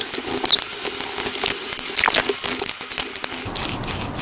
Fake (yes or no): no